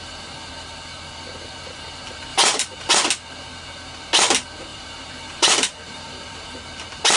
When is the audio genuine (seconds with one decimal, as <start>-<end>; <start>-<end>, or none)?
0.0-2.3; 2.9-4.7; 6.6-7.2